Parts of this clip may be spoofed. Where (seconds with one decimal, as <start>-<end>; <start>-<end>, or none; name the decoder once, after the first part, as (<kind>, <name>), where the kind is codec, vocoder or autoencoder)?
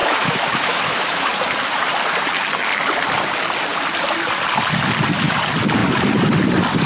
0.0-1.3 (autoencoder, DAC-VAE)